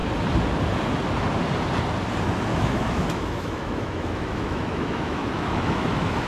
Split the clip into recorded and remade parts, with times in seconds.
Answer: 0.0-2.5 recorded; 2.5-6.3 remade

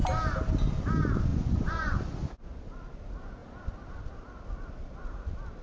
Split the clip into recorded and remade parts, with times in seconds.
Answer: 0.0-1.3 recorded; 1.3-2.1 remade; 2.1-5.6 recorded